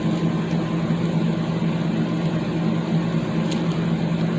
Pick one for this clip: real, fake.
real